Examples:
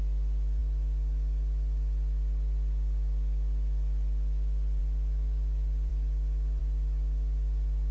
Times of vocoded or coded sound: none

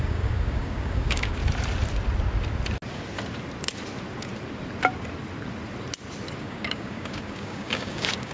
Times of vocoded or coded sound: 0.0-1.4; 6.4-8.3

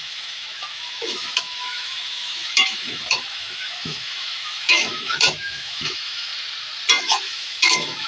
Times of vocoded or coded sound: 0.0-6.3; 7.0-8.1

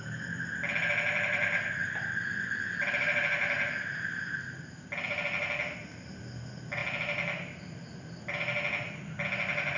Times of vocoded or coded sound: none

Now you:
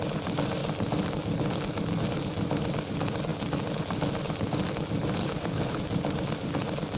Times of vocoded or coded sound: 5.2-5.8